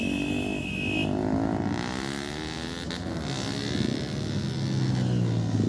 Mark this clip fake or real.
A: real